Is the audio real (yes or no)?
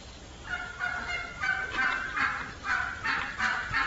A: yes